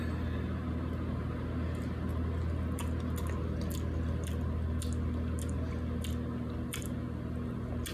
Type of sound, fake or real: real